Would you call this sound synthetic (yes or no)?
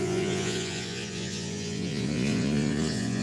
yes